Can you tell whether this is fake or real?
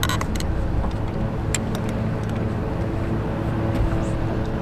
real